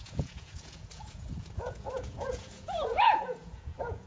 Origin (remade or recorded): remade